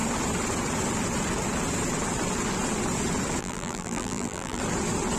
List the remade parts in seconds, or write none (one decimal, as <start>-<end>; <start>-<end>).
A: 3.4-4.6